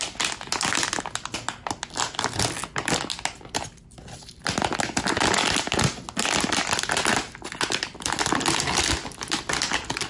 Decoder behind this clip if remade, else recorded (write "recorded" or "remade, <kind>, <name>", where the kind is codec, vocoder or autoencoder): recorded